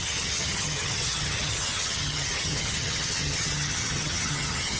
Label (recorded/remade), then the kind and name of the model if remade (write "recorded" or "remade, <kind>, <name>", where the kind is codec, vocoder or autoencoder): remade, vocoder, HiFi-GAN